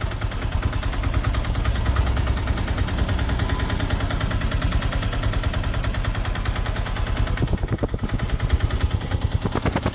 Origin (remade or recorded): recorded